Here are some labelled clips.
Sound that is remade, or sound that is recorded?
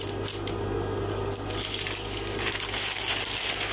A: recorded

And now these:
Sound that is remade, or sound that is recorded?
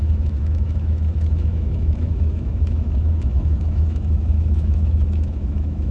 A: remade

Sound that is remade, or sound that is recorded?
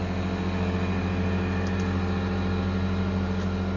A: recorded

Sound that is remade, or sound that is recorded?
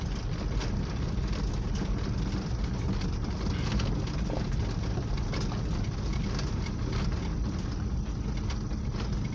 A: recorded